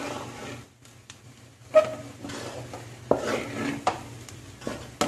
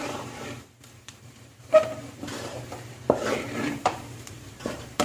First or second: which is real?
first